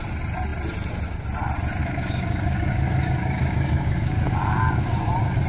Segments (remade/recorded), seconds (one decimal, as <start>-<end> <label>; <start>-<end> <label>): 0.0-1.8 recorded; 1.8-5.1 remade; 5.1-5.5 recorded